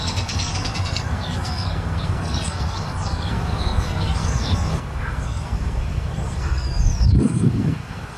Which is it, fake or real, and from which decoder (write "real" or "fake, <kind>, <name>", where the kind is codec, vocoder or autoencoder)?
fake, codec, SNAC